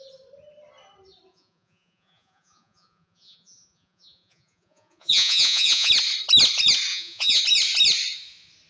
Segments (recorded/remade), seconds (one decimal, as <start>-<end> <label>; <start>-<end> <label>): 0.0-1.3 recorded; 1.3-5.9 remade; 5.9-6.9 recorded; 6.9-7.4 remade; 7.4-8.7 recorded